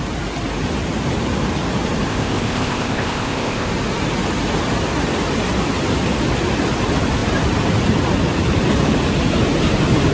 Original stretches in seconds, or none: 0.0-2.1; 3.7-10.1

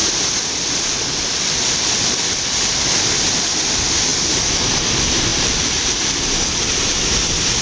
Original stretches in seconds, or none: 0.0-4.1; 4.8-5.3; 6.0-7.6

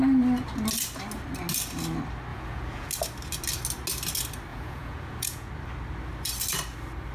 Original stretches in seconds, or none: 0.0-2.3; 2.9-4.5; 5.5-7.1